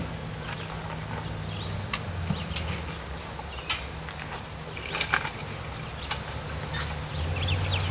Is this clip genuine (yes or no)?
yes